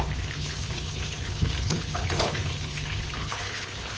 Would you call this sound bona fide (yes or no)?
no